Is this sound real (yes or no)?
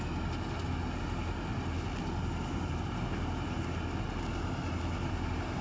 yes